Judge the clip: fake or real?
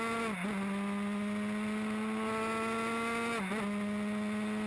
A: real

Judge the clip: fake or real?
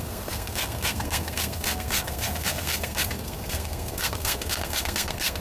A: fake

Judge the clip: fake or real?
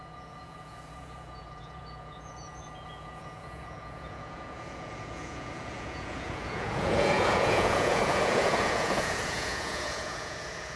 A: fake